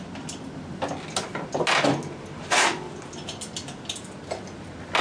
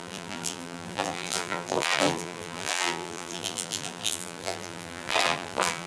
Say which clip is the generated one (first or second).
second